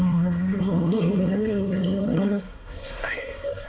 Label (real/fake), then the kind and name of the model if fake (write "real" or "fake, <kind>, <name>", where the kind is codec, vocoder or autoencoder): fake, codec, SNAC